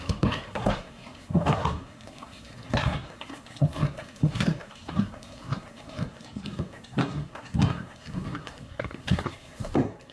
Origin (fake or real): fake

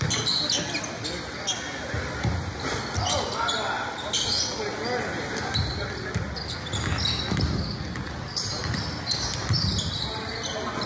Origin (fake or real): real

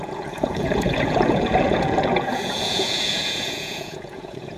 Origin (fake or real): fake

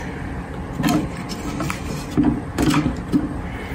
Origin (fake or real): real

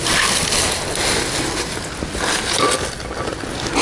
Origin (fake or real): real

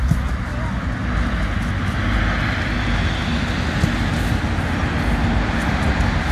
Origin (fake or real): real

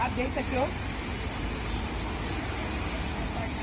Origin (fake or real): real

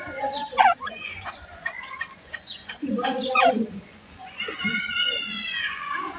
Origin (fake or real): fake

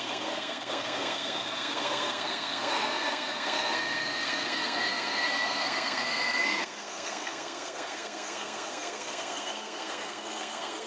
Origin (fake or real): fake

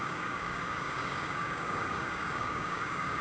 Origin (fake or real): fake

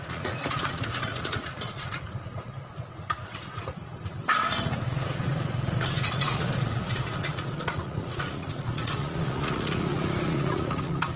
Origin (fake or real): fake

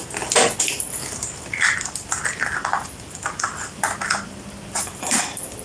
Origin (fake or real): real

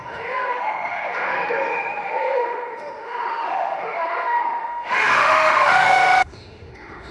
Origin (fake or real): fake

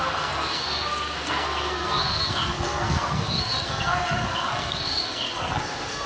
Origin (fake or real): fake